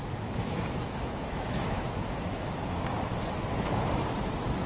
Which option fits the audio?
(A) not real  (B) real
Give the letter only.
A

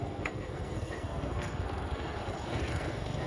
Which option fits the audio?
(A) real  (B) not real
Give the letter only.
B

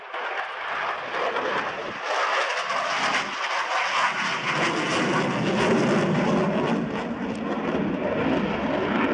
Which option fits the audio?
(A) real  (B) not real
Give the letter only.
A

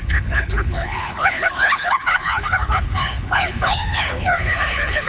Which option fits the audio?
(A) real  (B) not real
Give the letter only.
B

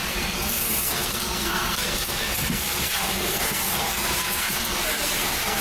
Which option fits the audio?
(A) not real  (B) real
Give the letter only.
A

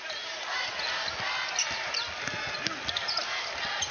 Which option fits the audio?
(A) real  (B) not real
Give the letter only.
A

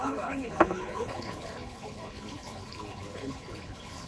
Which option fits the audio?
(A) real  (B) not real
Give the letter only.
B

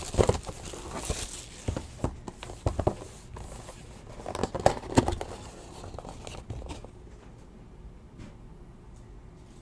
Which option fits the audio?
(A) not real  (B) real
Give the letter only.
B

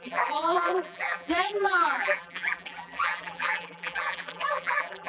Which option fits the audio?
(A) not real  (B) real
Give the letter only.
A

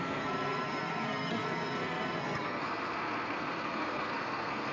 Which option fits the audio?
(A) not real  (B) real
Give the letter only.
A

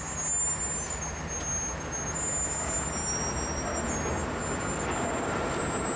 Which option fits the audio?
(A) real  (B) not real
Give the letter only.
A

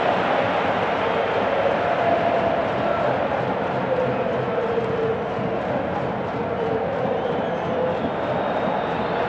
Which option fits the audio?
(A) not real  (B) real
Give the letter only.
B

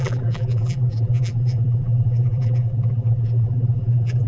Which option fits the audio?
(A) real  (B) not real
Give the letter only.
B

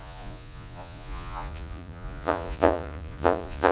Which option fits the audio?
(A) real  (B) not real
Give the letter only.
B